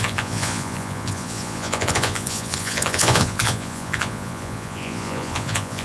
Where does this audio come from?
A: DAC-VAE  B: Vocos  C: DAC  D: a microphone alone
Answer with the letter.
B